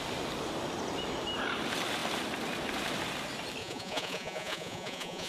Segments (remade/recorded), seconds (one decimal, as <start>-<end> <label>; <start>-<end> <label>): 0.0-3.6 recorded; 3.6-5.3 remade